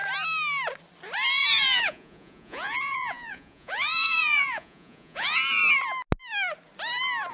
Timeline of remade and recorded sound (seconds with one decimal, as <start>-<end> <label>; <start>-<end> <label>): 0.0-1.5 recorded; 1.5-5.6 remade; 5.6-7.3 recorded